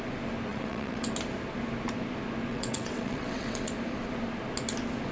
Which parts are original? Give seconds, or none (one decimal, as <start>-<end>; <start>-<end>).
0.0-0.5; 1.1-2.5; 3.7-5.1